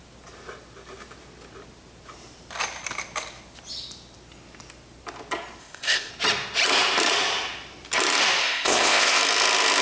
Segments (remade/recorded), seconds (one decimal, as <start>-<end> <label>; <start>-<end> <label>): 0.0-5.6 recorded; 5.6-6.1 remade; 6.1-8.4 recorded; 8.4-9.2 remade; 9.2-9.8 recorded